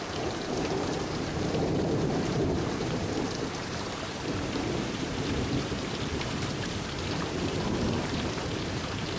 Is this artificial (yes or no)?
yes